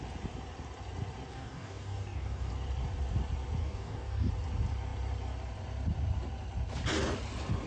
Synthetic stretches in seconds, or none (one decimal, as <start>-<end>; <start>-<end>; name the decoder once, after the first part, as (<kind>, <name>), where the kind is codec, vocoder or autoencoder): 1.3-2.5 (codec, DAC); 3.6-4.3